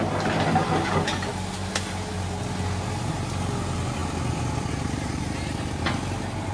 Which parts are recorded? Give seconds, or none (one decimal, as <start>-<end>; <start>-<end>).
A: 0.0-6.5